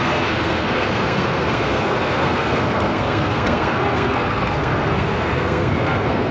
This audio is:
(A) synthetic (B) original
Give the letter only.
A